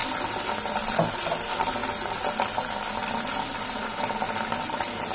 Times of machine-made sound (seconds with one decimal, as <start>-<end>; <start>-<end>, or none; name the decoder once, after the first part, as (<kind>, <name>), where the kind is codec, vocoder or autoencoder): none